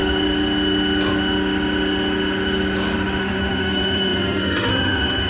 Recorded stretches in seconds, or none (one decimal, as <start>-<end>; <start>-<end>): 0.0-3.2